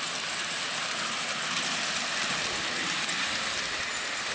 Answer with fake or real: real